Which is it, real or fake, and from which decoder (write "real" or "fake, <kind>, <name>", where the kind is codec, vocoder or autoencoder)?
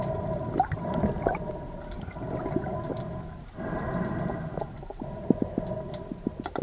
real